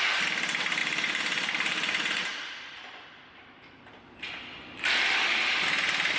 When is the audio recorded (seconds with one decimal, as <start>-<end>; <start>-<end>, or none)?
0.0-0.8; 2.2-6.2